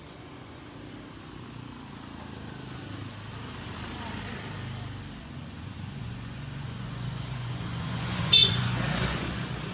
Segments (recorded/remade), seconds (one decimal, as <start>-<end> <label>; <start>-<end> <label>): 0.0-0.6 remade; 0.6-5.2 recorded; 5.2-9.7 remade